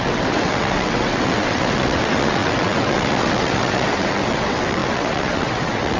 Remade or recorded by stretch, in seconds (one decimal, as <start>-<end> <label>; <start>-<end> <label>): 0.0-6.0 remade